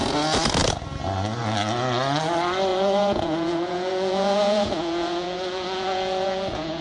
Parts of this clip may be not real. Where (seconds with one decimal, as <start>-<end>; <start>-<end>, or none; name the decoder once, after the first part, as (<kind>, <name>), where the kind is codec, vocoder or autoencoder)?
2.7-6.8 (vocoder, Vocos)